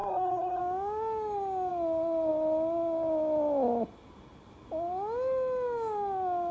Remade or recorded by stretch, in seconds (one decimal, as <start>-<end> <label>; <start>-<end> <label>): 0.0-0.6 remade; 0.6-6.5 recorded